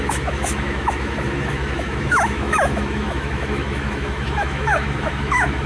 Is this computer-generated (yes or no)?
yes